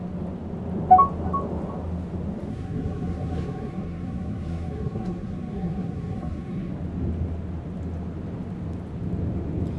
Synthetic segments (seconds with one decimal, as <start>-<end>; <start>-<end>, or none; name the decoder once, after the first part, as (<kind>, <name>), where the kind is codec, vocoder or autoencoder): 2.5-6.7 (codec, SNAC)